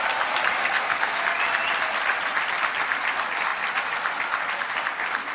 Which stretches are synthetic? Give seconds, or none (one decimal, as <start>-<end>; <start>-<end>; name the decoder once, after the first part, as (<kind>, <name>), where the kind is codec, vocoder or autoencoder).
0.6-1.2 (codec, SNAC)